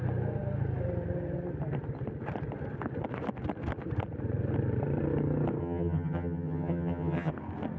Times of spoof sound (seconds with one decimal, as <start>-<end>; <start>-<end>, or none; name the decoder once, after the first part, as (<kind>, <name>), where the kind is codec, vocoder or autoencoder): 5.6-7.3 (vocoder, HiFi-GAN)

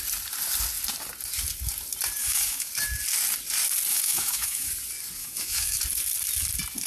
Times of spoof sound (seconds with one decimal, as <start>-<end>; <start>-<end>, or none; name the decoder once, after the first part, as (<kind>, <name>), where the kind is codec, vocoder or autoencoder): 2.2-2.7 (autoencoder, DAC-VAE); 3.9-4.7; 5.2-5.8

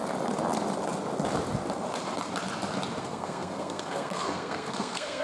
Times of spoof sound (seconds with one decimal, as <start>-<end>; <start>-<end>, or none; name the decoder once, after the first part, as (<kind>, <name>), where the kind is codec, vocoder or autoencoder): 3.0-5.2 (codec, SNAC)